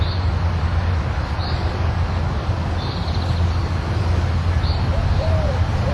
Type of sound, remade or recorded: recorded